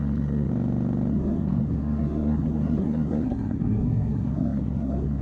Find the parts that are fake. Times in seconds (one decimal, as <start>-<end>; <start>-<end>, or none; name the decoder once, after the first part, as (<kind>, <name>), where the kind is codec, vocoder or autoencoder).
0.0-0.5 (codec, SNAC); 1.1-5.2